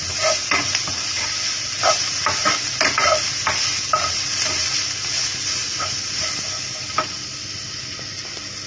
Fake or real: real